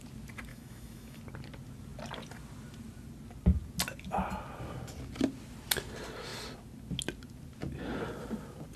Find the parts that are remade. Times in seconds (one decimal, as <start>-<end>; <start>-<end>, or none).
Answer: 0.5-1.2